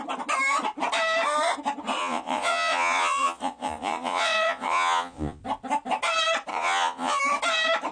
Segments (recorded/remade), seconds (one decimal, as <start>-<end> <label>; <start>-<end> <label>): 0.0-2.0 recorded; 2.0-5.4 remade; 5.4-6.5 recorded; 6.5-7.2 remade; 7.2-7.9 recorded

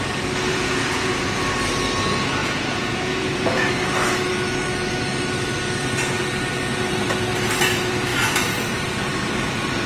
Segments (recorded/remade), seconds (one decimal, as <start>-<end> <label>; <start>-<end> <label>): 0.0-0.5 recorded; 0.5-1.4 remade; 1.4-2.4 recorded; 2.4-3.7 remade; 3.7-9.9 recorded